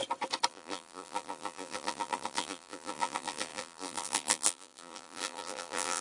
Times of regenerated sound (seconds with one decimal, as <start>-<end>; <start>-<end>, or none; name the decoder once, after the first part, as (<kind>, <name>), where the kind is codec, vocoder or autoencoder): 0.5-6.0 (vocoder, BigVGAN v2)